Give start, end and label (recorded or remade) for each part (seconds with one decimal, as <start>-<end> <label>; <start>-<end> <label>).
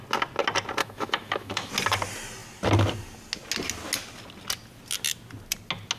0.0-0.8 recorded; 0.8-1.7 remade; 1.7-6.0 recorded